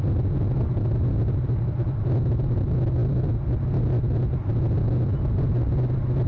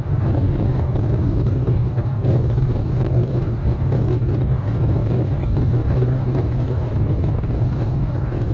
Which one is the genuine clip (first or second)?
first